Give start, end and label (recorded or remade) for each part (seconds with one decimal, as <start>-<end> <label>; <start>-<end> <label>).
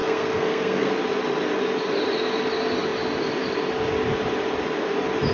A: 0.0-0.9 remade; 0.9-5.3 recorded